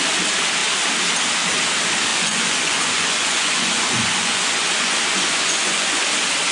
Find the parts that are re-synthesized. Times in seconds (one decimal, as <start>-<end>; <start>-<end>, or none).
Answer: 2.1-6.0